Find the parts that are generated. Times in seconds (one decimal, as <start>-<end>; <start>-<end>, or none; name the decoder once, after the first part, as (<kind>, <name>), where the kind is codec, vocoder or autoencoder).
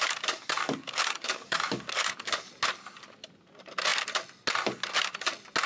0.0-2.5 (codec, DAC)